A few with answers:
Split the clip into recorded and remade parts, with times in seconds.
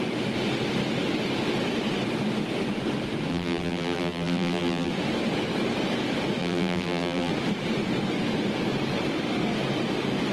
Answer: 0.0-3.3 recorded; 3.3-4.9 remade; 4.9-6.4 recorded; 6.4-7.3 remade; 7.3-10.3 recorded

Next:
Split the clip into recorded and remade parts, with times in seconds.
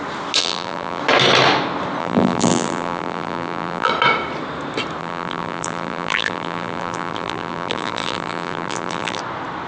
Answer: 0.0-0.4 recorded; 0.4-1.0 remade; 1.0-2.0 recorded; 2.0-3.9 remade; 3.9-5.0 recorded; 5.0-9.2 remade; 9.2-9.7 recorded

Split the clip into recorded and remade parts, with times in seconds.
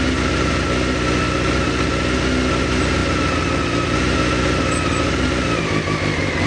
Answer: 0.0-6.5 recorded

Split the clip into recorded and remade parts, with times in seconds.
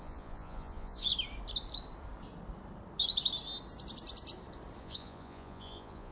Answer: 0.0-1.1 remade; 1.1-4.8 recorded; 4.8-6.1 remade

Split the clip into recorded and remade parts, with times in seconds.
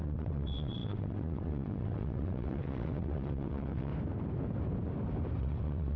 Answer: 0.0-3.9 remade; 3.9-5.4 recorded; 5.4-6.0 remade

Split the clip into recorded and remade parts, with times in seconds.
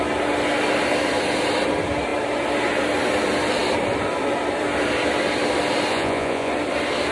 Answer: 0.0-5.9 recorded; 5.9-6.5 remade; 6.5-7.1 recorded